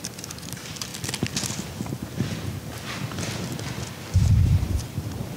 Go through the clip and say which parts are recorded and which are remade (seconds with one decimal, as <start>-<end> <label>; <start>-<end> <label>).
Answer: 0.0-0.9 remade; 0.9-4.1 recorded; 4.1-5.4 remade